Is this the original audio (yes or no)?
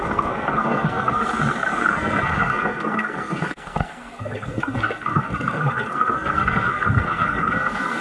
no